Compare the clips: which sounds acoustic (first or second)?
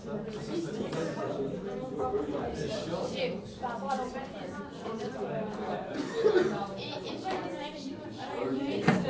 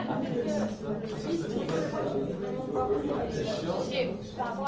second